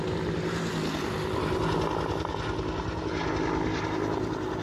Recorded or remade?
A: recorded